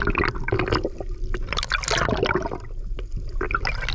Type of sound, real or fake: real